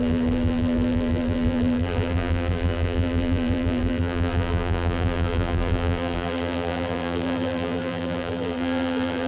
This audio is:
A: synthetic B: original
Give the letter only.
A